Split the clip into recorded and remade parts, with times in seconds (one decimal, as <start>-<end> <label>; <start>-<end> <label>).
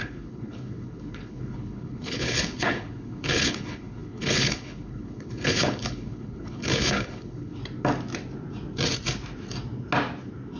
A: 0.0-7.6 remade; 7.6-10.6 recorded